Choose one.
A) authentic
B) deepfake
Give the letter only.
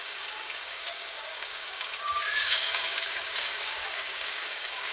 B